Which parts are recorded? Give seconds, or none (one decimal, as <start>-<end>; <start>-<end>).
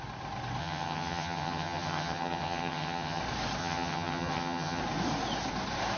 0.0-0.6; 3.2-3.6; 4.8-6.0